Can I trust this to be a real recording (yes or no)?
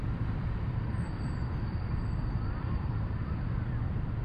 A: no